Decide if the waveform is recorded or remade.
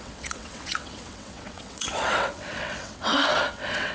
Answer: remade